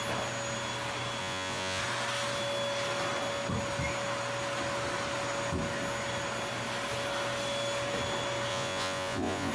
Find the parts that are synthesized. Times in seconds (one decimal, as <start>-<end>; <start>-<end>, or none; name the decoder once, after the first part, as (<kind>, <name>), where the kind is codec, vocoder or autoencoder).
1.2-1.8 (vocoder, Vocos); 8.5-9.5